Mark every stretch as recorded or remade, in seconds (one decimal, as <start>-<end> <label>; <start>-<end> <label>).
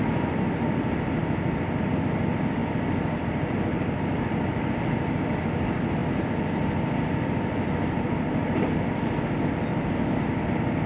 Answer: 0.0-2.6 recorded; 2.6-4.7 remade; 4.7-6.0 recorded; 6.0-9.2 remade; 9.2-10.9 recorded